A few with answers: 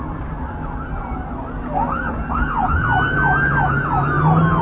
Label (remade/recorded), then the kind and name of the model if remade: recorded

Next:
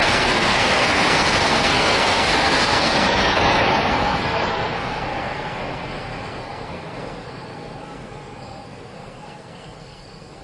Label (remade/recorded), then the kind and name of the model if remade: remade, codec, SNAC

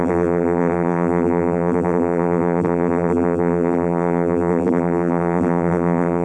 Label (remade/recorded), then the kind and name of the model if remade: remade, vocoder, BigVGAN v2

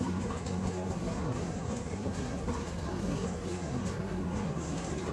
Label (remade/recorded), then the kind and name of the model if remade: remade, codec, SNAC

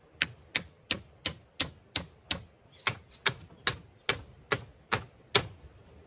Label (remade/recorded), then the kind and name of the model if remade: recorded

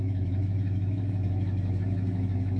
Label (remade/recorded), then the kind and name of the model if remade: remade, autoencoder, DAC-VAE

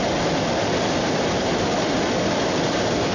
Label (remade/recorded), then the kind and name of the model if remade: recorded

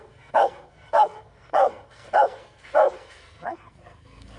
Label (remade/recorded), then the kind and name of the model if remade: remade, codec, SNAC